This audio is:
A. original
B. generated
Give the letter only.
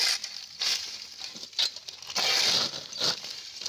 A